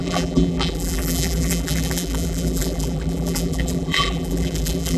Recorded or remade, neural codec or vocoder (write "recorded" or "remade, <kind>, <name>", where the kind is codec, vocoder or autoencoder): remade, vocoder, BigVGAN v2